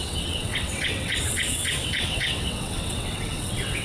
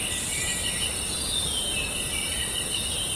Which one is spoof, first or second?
first